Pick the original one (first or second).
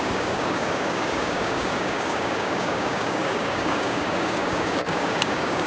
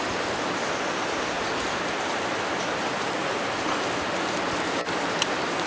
second